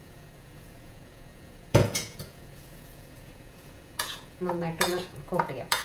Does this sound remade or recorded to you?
remade